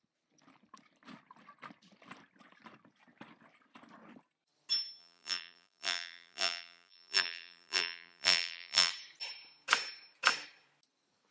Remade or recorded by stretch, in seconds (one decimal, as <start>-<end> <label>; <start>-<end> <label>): 0.0-5.0 recorded; 5.0-8.9 remade; 8.9-11.3 recorded